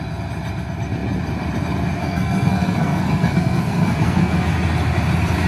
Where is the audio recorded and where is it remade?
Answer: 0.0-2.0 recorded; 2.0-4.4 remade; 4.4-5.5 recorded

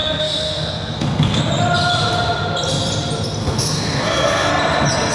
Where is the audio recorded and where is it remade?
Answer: 0.0-1.4 remade; 1.4-3.4 recorded; 3.4-4.5 remade; 4.5-5.1 recorded